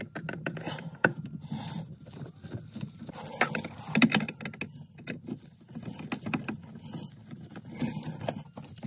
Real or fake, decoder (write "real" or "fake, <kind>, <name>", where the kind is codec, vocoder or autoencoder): real